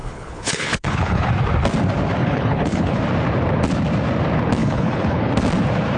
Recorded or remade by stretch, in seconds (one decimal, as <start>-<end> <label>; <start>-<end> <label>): 0.0-1.3 remade; 1.3-2.2 recorded; 2.2-3.0 remade; 3.0-4.6 recorded; 4.6-5.3 remade; 5.3-6.0 recorded